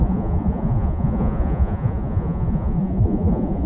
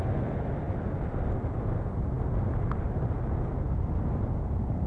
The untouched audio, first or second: second